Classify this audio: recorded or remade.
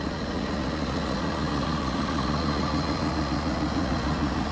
remade